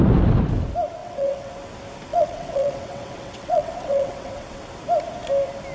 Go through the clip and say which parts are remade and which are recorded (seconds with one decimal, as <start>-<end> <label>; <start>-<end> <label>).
0.0-1.0 recorded; 1.0-1.5 remade; 1.5-2.1 recorded; 2.1-4.6 remade; 4.6-5.7 recorded